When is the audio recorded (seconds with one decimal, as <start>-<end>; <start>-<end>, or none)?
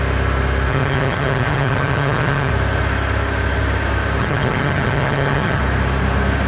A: 0.0-0.7; 2.5-4.2; 5.6-6.5